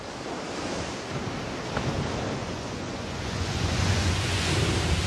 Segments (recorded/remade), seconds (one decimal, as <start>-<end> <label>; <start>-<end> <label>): 0.0-2.4 recorded; 2.4-4.5 remade; 4.5-5.1 recorded